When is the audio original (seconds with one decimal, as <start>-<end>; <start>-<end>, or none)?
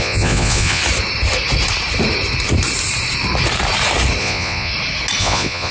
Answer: 0.8-4.2; 4.7-5.2